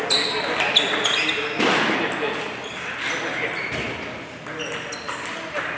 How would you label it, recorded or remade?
recorded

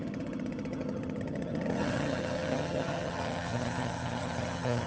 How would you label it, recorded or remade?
remade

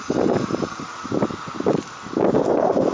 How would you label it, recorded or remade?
recorded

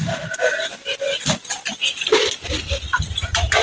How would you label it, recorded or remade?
recorded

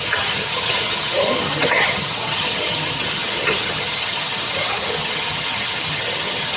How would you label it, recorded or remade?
remade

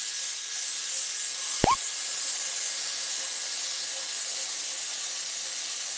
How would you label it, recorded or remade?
recorded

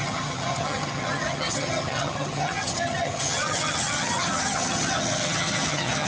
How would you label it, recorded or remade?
remade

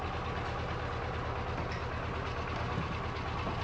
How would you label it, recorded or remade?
recorded